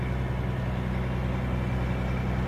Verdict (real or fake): real